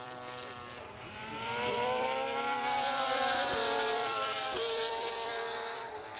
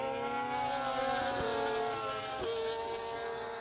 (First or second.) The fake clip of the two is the first